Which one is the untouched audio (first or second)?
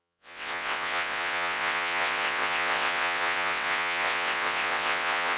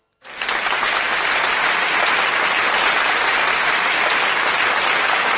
second